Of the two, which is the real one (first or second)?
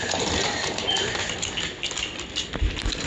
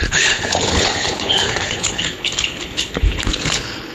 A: first